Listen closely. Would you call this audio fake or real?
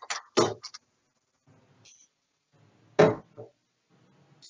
real